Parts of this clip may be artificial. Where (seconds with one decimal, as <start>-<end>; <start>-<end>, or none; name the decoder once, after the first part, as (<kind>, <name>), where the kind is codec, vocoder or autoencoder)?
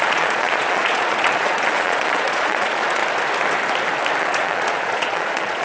0.0-3.0 (vocoder, Vocos); 4.2-5.6